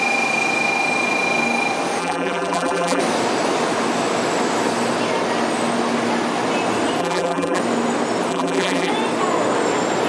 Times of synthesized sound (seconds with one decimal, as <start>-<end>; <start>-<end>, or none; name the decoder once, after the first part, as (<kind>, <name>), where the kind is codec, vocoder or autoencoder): 2.0-3.0 (vocoder, BigVGAN v2); 7.0-7.6; 8.3-8.9